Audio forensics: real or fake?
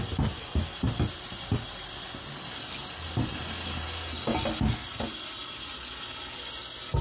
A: real